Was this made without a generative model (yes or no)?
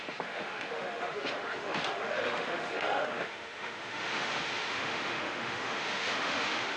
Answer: no